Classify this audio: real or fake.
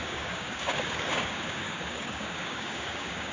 fake